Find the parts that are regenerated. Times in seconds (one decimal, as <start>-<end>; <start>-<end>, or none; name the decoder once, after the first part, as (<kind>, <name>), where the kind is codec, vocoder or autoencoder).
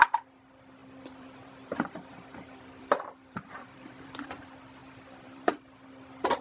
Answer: 0.8-4.3 (vocoder, BigVGAN v2); 4.8-5.5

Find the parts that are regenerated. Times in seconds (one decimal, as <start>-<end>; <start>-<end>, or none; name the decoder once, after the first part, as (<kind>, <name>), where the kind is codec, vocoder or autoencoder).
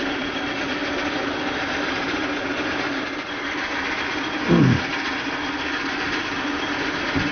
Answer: 0.0-4.9 (vocoder, BigVGAN v2); 6.2-7.3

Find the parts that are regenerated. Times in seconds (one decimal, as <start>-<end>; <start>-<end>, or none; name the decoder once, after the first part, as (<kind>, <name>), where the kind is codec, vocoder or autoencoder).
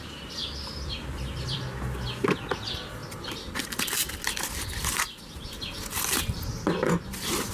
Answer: 0.4-1.6 (vocoder, BigVGAN v2)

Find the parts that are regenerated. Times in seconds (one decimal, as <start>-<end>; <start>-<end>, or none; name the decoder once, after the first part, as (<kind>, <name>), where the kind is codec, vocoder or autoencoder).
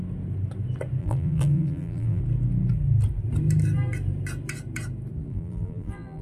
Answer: 1.0-2.2 (vocoder, BigVGAN v2); 5.3-6.2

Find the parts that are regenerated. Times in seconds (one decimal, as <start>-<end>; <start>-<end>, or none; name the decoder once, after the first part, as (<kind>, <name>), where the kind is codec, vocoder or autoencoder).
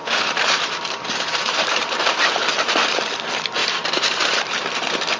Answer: 0.0-2.7 (vocoder, BigVGAN v2); 3.6-5.2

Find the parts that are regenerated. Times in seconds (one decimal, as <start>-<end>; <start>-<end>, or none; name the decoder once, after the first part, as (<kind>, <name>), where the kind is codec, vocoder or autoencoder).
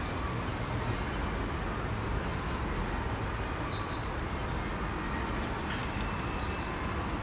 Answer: 5.8-6.7 (vocoder, BigVGAN v2)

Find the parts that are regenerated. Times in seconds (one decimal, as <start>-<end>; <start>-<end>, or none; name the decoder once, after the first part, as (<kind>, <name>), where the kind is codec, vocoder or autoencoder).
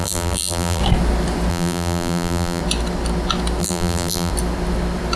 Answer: 0.0-0.8 (vocoder, BigVGAN v2); 1.5-2.6; 3.6-4.3